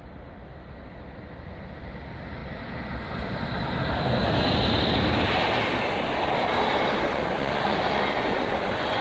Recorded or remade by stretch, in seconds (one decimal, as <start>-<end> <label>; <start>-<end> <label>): 0.0-7.1 recorded; 7.1-9.0 remade